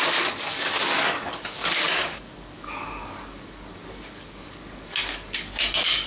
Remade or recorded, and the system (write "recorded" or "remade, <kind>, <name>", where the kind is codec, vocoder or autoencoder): remade, codec, DAC